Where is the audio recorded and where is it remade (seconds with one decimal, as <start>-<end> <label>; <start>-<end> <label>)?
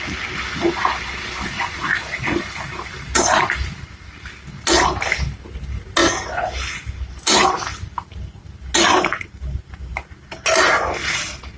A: 0.0-11.6 recorded